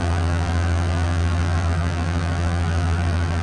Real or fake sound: fake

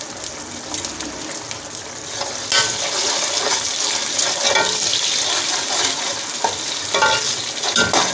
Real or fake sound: real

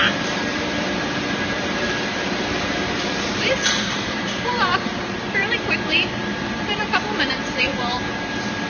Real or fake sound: fake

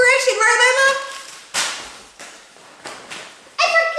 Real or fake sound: fake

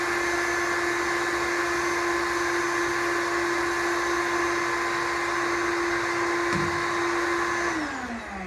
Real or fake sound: real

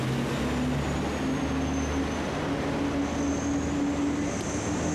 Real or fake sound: real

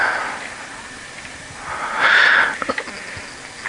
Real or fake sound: real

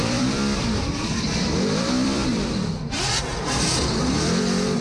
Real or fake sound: fake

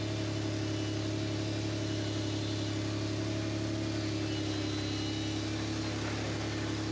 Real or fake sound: real